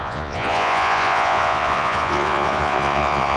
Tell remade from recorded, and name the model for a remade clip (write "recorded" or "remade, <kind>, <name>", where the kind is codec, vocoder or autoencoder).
remade, vocoder, Vocos